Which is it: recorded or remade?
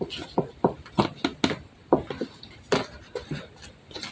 recorded